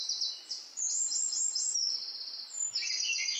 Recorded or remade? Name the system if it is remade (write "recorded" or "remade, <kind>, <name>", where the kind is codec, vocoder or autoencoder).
recorded